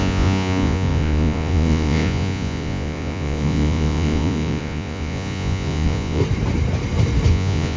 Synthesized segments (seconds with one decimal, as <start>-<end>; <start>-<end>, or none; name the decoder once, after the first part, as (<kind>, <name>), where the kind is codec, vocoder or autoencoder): 0.0-6.2 (vocoder, Vocos); 7.3-7.8